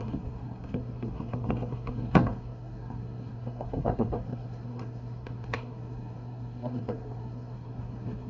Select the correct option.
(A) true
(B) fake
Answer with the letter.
B